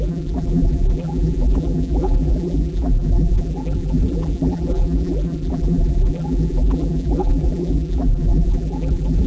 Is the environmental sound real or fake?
fake